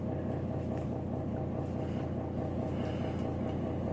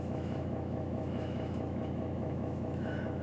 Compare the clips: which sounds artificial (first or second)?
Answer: second